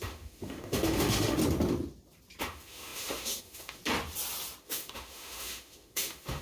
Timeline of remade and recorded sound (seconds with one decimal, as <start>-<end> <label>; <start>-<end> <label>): 0.0-1.4 remade; 1.4-2.4 recorded; 2.4-3.8 remade; 3.8-4.6 recorded; 4.6-6.4 remade